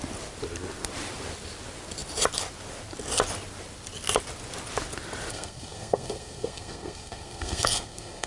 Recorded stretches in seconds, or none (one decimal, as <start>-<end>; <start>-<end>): 0.0-5.3